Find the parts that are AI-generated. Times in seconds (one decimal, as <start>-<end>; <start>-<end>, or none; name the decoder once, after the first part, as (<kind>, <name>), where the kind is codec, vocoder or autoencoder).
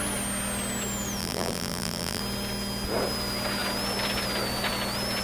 1.2-2.2 (vocoder, BigVGAN v2)